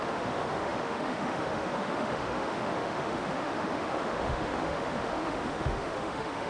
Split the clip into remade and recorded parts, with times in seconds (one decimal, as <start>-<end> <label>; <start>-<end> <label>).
0.0-6.5 remade